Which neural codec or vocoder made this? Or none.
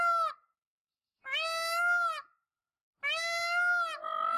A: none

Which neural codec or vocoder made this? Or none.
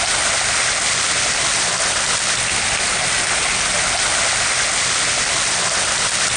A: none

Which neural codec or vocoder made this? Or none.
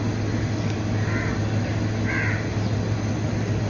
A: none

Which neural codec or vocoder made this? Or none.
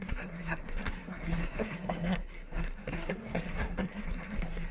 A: codec, SNAC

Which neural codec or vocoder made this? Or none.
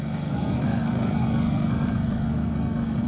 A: codec, SNAC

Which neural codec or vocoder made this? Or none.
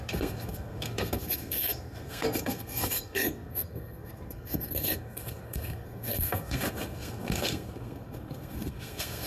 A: codec, SNAC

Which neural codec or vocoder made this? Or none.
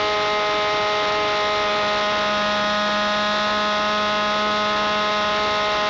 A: none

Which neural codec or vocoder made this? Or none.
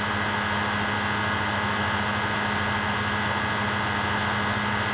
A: none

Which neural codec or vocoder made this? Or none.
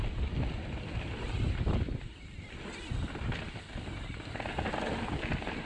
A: none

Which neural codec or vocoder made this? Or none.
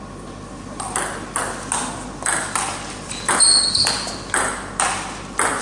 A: none